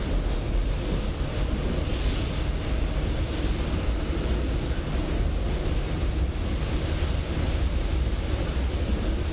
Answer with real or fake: real